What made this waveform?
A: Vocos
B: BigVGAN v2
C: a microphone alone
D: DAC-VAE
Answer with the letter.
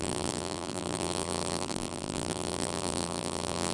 B